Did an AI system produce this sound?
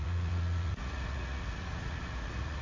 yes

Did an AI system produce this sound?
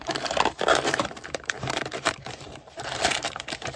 yes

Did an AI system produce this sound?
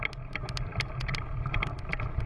no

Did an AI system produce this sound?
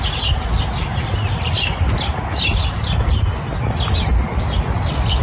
no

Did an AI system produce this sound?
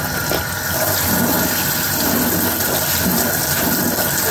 no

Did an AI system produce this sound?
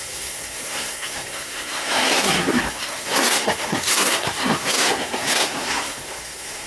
yes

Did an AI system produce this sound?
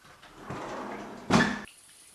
no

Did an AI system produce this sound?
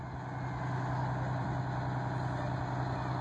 no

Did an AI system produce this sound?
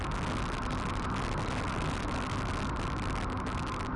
no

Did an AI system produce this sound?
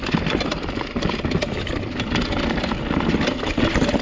no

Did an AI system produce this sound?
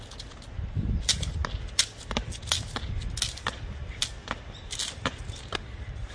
no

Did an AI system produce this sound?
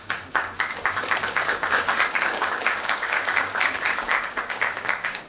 yes